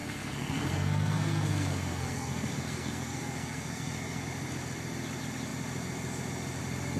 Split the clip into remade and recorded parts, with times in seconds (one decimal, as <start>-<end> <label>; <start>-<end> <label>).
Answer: 0.0-4.2 remade; 4.2-7.0 recorded